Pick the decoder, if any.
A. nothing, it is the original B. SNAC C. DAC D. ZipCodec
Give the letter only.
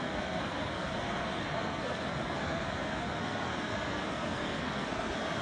B